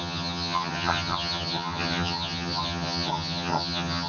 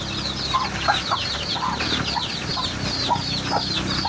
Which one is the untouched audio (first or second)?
second